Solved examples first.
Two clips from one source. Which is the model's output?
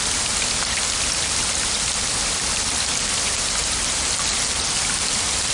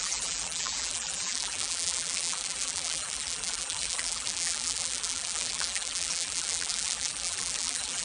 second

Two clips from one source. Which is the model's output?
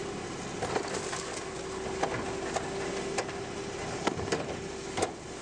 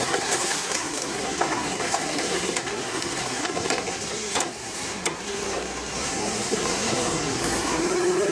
second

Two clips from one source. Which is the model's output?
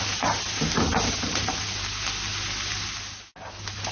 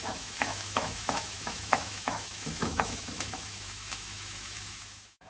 second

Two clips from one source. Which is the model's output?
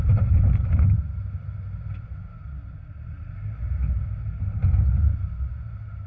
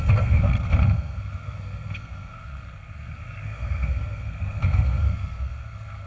second